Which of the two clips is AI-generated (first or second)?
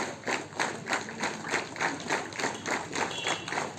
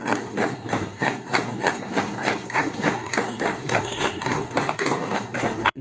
second